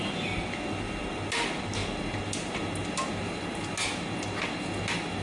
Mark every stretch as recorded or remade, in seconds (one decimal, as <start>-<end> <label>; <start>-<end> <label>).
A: 0.0-5.2 recorded